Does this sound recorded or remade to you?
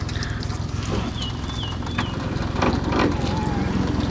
recorded